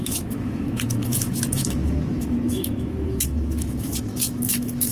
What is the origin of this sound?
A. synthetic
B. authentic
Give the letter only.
A